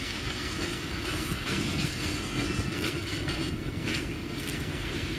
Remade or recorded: remade